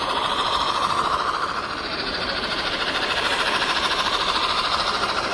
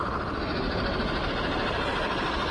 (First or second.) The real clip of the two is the second